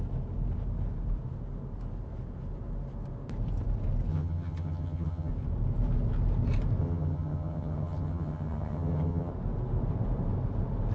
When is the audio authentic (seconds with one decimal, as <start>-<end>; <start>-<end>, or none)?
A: 0.0-4.1; 5.3-6.8; 9.3-10.9